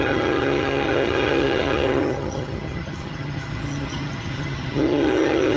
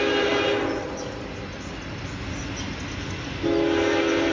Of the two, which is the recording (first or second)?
second